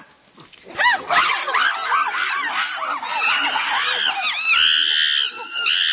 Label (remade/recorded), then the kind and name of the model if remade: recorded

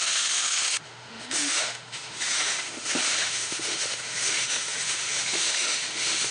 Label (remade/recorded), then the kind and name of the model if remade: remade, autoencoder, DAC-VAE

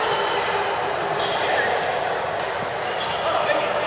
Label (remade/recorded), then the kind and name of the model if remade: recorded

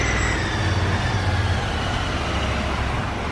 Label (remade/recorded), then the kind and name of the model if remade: recorded